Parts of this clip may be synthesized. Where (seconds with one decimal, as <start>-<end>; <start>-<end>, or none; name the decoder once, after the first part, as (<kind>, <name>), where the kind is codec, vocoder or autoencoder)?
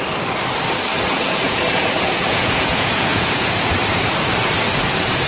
0.9-4.1 (vocoder, Vocos)